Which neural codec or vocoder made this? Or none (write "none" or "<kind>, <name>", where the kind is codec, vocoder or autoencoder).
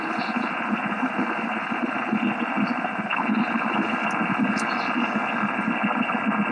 none